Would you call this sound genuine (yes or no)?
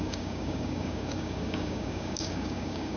no